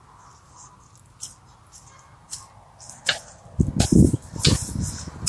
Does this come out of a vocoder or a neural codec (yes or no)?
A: no